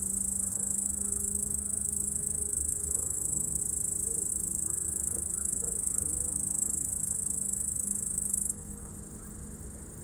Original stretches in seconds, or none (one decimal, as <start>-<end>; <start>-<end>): 0.0-0.5; 3.6-4.3; 8.9-10.0